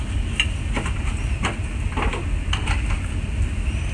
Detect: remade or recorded recorded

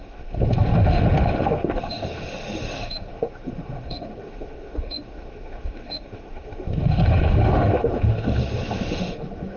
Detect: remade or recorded remade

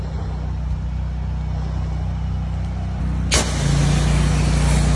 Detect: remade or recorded recorded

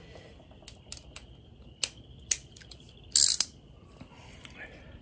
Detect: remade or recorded recorded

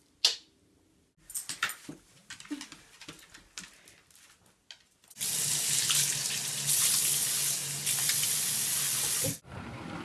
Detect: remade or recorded recorded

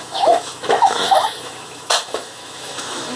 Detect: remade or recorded remade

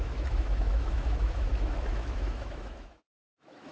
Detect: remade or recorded remade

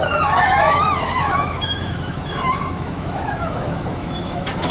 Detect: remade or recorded remade